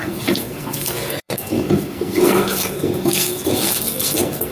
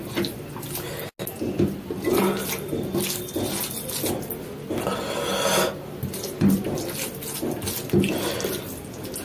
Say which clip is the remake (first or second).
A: first